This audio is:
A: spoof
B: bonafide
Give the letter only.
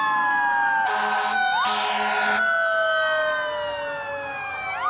B